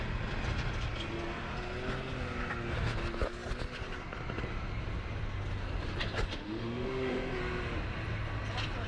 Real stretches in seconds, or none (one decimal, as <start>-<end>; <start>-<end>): 0.0-6.3; 7.4-8.9